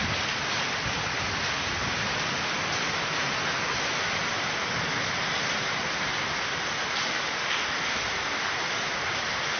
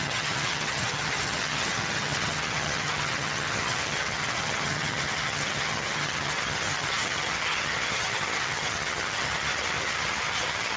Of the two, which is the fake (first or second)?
second